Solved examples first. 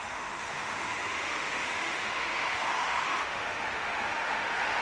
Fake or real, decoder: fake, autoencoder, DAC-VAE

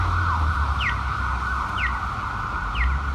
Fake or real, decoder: real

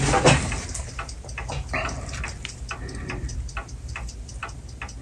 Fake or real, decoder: real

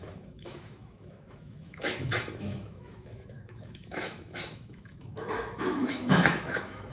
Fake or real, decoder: fake, autoencoder, DAC-VAE